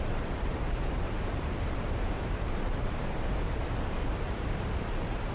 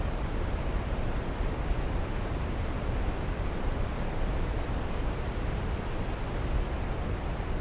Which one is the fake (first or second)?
first